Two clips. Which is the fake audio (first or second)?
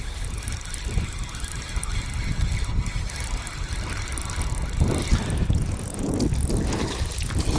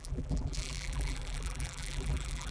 second